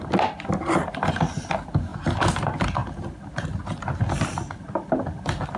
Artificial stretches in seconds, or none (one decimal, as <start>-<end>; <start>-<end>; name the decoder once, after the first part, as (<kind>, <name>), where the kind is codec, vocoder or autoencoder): none